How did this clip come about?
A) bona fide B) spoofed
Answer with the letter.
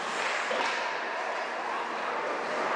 A